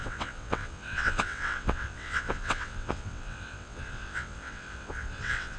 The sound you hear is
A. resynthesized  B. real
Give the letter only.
A